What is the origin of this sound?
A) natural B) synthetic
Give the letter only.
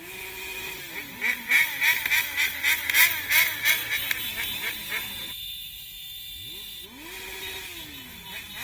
A